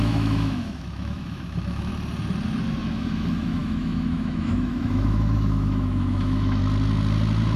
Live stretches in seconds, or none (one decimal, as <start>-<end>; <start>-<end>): 1.9-2.8; 6.6-7.6